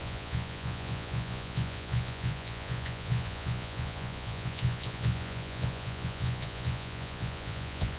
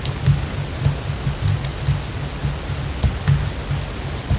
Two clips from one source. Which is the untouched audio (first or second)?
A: second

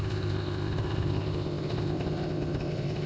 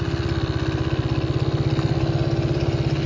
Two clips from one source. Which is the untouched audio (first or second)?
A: second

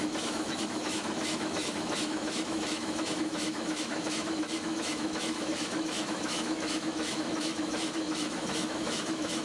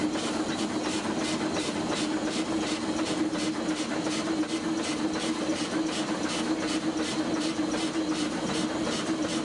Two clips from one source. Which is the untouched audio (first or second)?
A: second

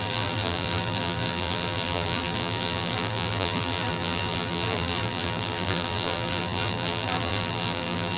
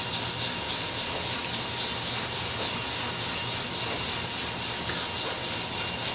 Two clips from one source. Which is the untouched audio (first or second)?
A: second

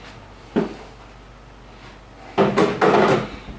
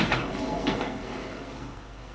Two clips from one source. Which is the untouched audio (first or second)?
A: first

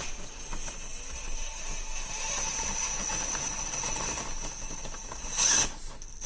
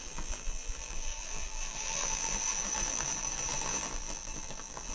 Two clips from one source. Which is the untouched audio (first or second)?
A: first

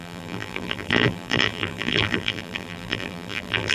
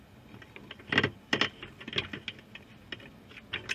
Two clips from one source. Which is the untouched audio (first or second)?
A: second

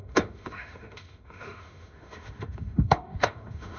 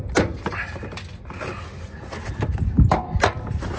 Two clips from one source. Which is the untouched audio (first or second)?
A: second